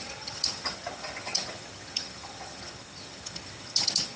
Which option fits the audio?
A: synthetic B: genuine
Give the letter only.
A